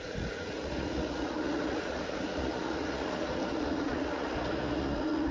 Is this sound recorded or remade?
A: remade